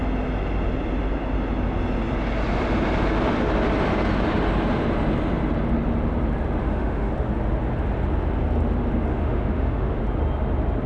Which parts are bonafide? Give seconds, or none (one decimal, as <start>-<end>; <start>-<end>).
0.0-6.6; 7.1-9.1; 10.0-10.9

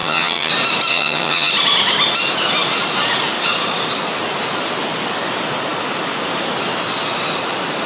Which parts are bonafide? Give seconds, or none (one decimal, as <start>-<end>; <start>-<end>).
0.5-0.9; 1.5-7.9

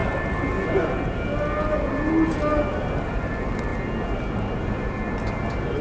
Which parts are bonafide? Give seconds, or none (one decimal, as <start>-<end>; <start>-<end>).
0.0-5.8

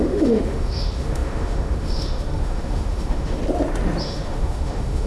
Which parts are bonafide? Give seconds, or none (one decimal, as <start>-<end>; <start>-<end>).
3.4-4.0

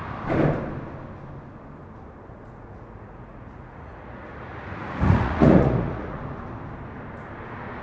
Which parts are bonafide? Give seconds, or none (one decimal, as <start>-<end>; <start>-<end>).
0.0-2.3; 6.2-7.8

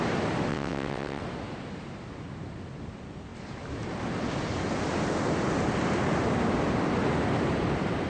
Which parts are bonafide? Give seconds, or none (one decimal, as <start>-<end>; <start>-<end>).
0.0-0.5; 1.2-8.1

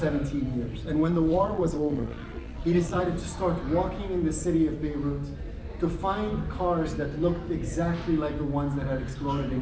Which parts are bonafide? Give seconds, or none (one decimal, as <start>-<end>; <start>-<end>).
0.0-1.0; 3.0-9.6